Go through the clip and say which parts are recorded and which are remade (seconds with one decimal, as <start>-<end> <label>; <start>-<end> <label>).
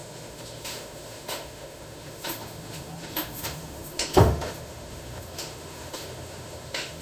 0.0-7.0 remade